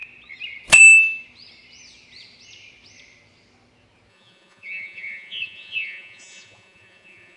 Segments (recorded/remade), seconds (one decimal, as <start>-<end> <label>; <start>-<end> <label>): 0.0-4.1 recorded; 4.1-7.4 remade